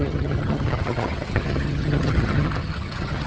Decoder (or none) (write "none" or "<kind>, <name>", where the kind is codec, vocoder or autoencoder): vocoder, HiFi-GAN